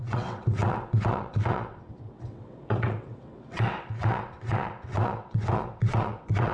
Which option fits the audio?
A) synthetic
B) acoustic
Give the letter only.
A